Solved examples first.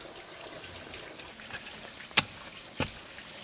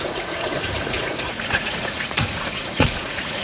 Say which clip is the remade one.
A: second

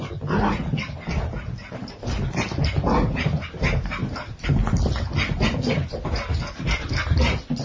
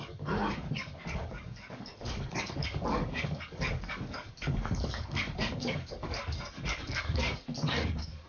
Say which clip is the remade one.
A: second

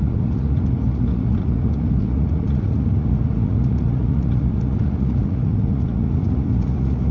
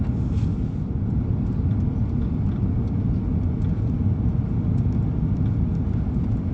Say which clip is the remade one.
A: first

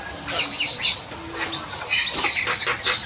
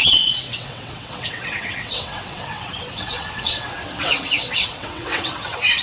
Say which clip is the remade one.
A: second